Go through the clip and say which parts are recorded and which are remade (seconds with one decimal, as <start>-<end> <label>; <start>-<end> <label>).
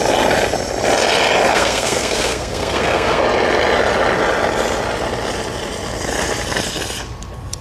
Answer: 0.0-1.5 recorded; 1.5-3.2 remade; 3.2-7.6 recorded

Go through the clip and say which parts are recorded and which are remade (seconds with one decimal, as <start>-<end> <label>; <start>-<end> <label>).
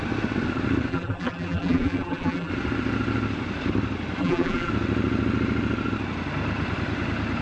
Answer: 0.0-0.9 recorded; 0.9-2.5 remade; 2.5-4.2 recorded; 4.2-4.7 remade; 4.7-7.4 recorded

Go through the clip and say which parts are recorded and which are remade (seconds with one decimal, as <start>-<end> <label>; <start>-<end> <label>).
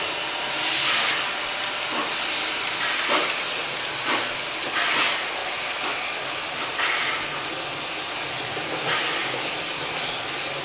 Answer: 0.0-10.6 recorded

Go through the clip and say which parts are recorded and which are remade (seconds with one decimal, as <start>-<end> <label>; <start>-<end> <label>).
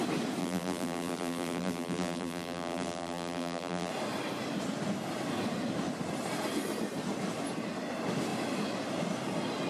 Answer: 0.0-0.4 recorded; 0.4-3.9 remade; 3.9-9.7 recorded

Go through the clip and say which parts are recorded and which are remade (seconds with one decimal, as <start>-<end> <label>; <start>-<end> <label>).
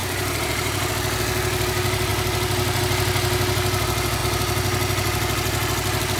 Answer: 0.0-0.9 remade; 0.9-6.2 recorded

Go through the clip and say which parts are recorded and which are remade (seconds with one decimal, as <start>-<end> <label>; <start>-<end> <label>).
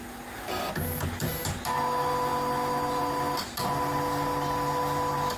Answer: 0.0-5.4 recorded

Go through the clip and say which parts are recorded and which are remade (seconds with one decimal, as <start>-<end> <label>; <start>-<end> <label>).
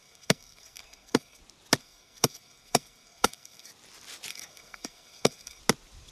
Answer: 0.0-1.4 remade; 1.4-1.8 recorded; 1.8-3.7 remade; 3.7-4.3 recorded; 4.3-5.6 remade; 5.6-6.1 recorded